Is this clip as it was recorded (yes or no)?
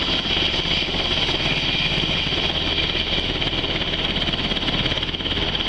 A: yes